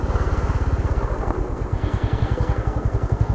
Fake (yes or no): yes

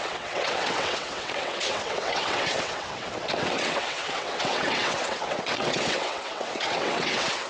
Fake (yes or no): yes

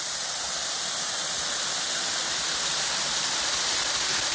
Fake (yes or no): no